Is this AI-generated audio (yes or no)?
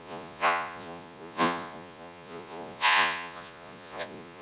yes